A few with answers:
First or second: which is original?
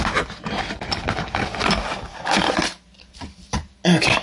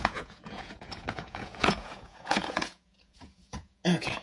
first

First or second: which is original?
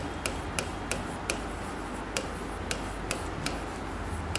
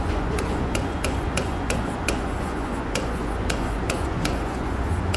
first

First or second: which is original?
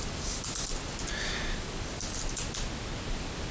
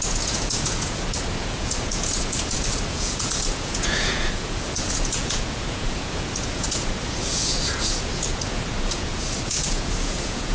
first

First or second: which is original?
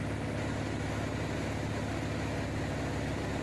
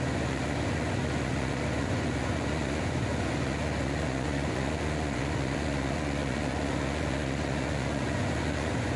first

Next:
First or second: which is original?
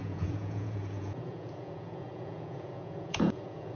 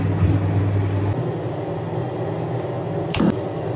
second